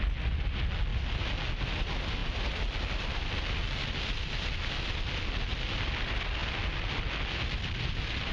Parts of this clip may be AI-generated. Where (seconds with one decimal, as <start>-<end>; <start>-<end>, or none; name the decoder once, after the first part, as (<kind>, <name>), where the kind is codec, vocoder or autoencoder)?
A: none